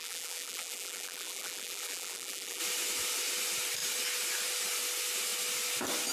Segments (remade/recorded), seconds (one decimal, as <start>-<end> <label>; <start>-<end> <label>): 0.0-2.6 remade; 2.6-6.1 recorded